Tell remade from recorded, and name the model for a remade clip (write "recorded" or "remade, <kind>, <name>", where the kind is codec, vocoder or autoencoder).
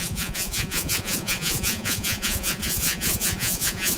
remade, vocoder, Vocos